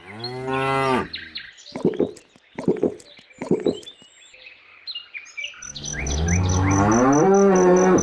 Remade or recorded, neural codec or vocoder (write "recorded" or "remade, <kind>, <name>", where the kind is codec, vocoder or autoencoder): recorded